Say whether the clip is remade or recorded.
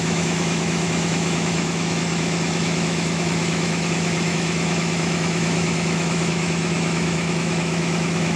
remade